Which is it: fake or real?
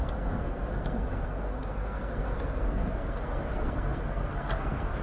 fake